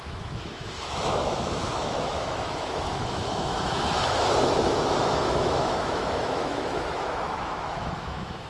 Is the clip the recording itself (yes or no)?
no